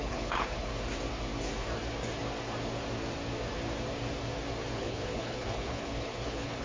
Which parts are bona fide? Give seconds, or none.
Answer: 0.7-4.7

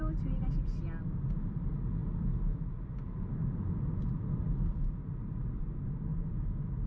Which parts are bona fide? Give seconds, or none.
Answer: 0.0-6.9

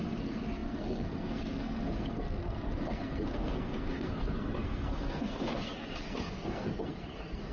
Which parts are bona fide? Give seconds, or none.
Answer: none